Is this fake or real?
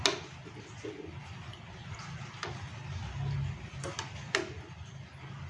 real